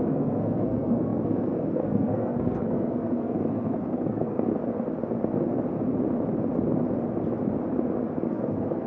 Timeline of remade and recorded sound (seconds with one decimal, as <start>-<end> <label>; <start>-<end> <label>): 0.0-4.5 remade; 4.5-8.3 recorded; 8.3-8.9 remade